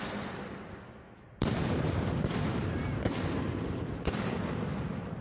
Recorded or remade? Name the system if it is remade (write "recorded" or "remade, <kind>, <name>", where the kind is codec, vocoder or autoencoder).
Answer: recorded